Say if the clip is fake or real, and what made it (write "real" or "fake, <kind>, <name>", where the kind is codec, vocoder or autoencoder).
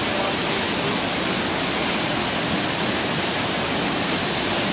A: real